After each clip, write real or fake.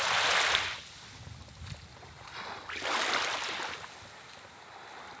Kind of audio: real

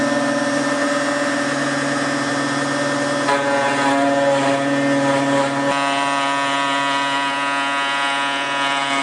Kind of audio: real